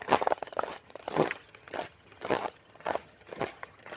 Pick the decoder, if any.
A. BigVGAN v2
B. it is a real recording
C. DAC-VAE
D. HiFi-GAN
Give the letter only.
D